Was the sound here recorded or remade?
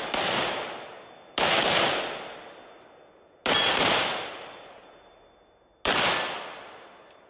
recorded